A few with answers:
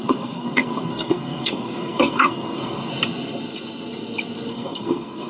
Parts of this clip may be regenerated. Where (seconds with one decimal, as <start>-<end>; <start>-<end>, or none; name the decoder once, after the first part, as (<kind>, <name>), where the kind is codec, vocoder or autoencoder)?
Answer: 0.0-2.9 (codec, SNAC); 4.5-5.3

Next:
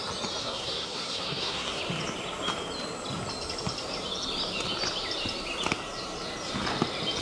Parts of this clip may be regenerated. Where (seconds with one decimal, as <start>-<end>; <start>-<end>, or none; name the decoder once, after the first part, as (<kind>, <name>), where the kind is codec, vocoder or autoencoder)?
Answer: 0.4-1.8 (codec, SNAC)

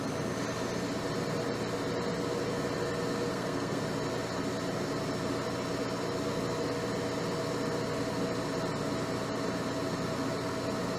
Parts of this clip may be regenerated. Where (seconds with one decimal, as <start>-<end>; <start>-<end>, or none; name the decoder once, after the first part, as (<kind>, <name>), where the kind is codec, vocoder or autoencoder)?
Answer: 3.3-3.8 (codec, SNAC)